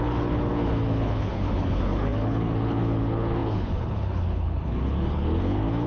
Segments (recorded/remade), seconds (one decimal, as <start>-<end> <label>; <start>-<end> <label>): 0.0-5.9 remade

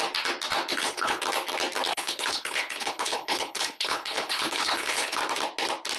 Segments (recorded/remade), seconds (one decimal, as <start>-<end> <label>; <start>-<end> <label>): 0.0-0.7 recorded; 0.7-1.2 remade; 1.2-1.9 recorded; 1.9-5.2 remade; 5.2-6.0 recorded

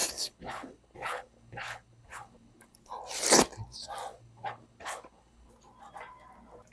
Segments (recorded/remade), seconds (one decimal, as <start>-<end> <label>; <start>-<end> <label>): 0.0-2.8 remade; 2.8-4.1 recorded; 4.1-5.5 remade; 5.5-6.7 recorded

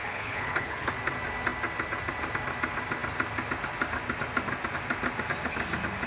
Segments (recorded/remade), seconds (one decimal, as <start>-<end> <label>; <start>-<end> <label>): 0.0-0.9 remade; 0.9-6.1 recorded